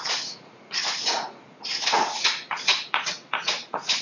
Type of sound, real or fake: fake